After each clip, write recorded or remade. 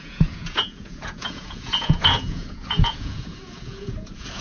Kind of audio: remade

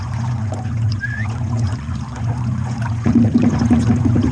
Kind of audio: remade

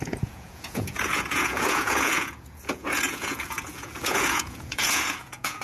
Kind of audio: remade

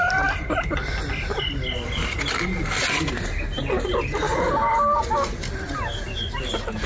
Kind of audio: recorded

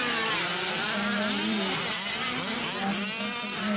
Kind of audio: recorded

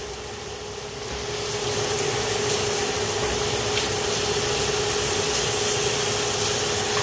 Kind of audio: recorded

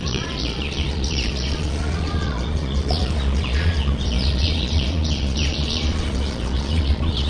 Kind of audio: remade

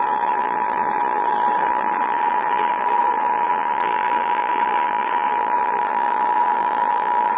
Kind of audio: remade